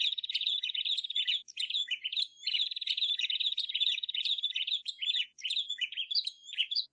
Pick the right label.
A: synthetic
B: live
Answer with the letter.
A